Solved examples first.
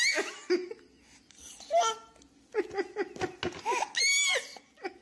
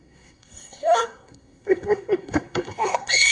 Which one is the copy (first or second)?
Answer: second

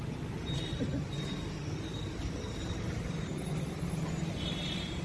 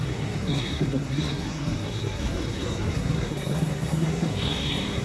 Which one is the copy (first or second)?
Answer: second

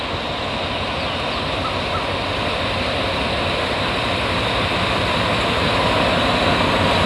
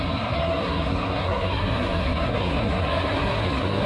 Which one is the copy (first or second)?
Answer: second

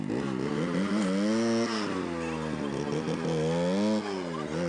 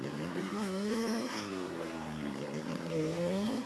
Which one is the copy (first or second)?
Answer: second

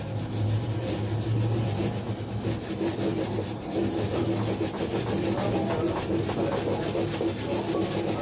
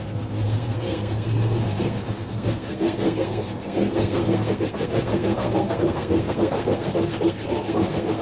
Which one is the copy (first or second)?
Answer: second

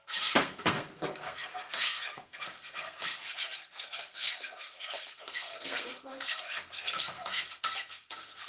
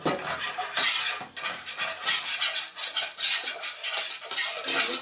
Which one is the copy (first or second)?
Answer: first